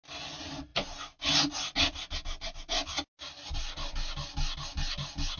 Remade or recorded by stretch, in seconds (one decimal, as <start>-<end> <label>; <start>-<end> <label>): 0.0-5.4 recorded